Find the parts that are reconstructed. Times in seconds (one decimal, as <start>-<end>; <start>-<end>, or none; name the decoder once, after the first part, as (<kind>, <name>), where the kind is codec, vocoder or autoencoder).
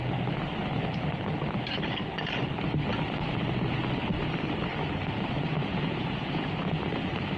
5.7-6.8 (vocoder, Vocos)